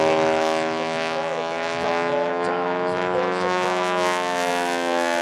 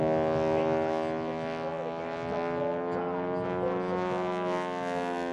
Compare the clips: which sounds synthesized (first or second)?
first